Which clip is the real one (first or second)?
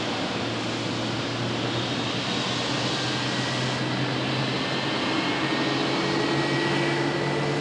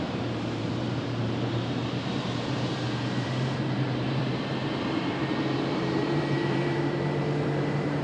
first